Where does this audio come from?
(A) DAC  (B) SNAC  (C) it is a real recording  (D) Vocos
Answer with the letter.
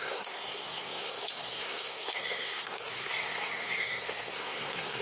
B